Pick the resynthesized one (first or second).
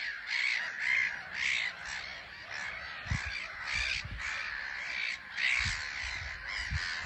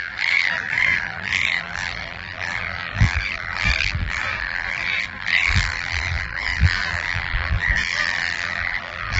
second